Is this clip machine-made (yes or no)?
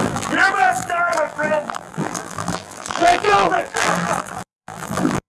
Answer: yes